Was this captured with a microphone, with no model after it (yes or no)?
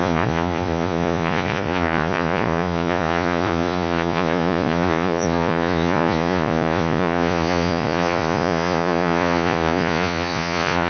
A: no